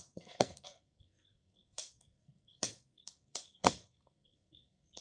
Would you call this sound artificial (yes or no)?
yes